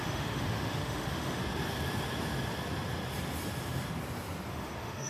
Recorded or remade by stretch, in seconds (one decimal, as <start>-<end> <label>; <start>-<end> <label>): 0.0-1.4 remade; 1.4-4.5 recorded; 4.5-5.1 remade